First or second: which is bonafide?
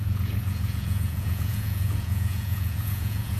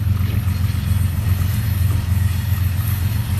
second